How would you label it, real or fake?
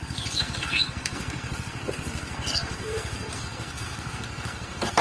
fake